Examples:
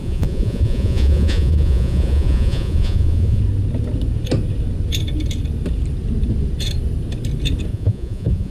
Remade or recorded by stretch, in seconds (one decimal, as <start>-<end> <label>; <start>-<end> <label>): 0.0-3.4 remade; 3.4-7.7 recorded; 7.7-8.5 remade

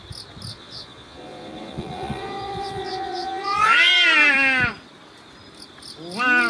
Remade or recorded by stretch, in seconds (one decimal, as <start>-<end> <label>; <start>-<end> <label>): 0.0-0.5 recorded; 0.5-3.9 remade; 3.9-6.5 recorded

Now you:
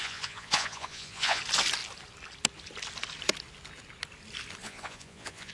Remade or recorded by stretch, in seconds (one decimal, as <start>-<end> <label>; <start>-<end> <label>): 0.0-1.4 remade; 1.4-4.6 recorded; 4.6-5.5 remade

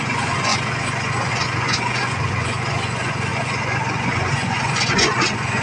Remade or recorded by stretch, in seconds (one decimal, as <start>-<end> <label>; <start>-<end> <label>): 0.0-5.6 remade

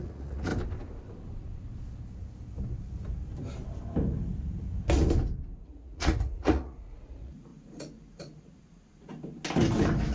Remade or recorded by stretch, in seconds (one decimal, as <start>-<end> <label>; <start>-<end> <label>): 0.0-0.5 remade; 0.5-5.6 recorded; 5.6-9.1 remade; 9.1-10.1 recorded